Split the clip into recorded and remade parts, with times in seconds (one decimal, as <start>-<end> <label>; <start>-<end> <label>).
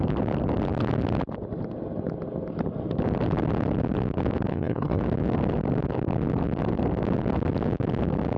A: 0.0-4.5 recorded; 4.5-5.0 remade; 5.0-8.4 recorded